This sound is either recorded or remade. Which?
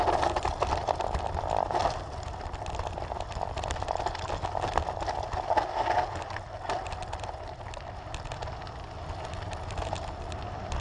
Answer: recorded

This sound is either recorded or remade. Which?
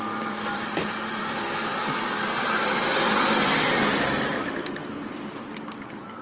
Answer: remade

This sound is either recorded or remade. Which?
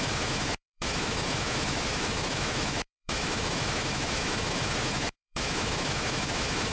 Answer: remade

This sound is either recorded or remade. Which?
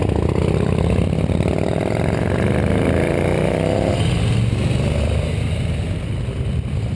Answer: recorded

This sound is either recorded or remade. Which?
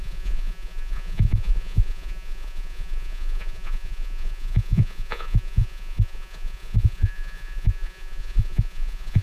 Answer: remade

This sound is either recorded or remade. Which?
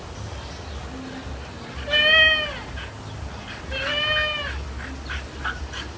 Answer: recorded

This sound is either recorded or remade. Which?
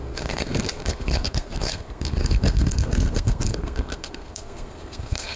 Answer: remade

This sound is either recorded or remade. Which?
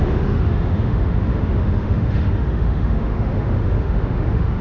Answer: remade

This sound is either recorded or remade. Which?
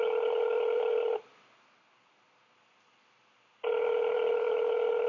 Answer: recorded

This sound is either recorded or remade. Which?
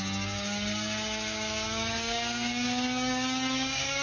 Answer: remade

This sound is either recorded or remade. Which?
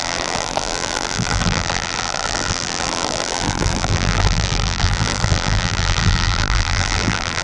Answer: remade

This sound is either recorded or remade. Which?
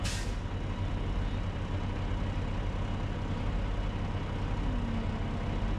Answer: recorded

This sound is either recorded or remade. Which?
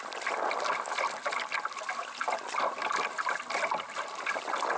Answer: recorded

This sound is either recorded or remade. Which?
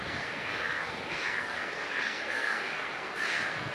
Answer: remade